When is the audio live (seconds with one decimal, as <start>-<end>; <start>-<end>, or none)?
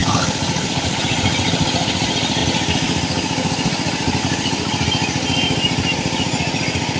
1.0-7.0